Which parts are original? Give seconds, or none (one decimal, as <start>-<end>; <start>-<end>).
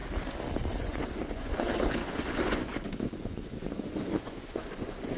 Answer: 0.0-0.8